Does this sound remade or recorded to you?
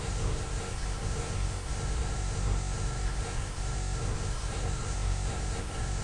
remade